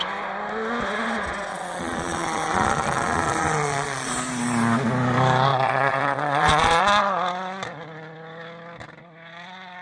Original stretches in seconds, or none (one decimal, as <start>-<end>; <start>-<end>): 0.0-1.5; 4.1-5.5; 6.8-9.8